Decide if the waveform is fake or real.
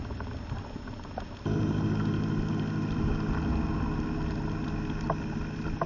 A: real